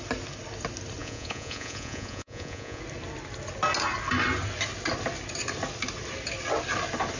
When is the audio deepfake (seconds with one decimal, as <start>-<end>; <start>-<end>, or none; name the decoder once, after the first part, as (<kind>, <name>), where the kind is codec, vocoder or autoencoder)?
1.0-2.8 (vocoder, Vocos)